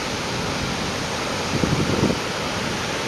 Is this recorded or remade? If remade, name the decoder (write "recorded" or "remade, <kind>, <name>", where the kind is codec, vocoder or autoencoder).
recorded